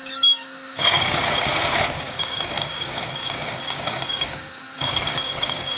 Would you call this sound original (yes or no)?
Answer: no